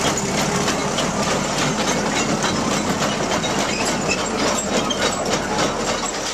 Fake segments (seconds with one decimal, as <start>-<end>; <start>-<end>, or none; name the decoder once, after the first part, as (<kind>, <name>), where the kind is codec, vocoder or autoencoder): none